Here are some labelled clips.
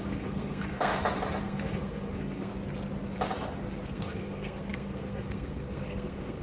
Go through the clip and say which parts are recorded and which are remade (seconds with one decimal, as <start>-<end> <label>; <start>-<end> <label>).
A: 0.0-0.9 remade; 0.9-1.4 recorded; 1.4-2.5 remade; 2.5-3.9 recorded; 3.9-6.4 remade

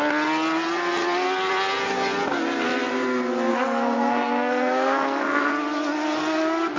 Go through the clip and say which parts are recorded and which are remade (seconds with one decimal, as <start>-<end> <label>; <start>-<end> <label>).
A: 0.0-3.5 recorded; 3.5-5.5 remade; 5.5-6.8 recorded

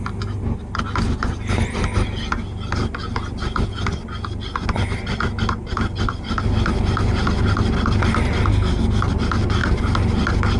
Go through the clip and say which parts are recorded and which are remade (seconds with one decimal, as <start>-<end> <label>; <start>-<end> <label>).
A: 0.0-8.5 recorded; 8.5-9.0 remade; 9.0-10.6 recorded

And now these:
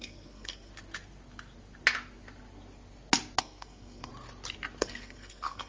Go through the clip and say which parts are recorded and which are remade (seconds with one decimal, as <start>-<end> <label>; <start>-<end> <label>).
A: 0.0-0.7 remade; 0.7-3.4 recorded; 3.4-4.1 remade; 4.1-4.8 recorded; 4.8-5.7 remade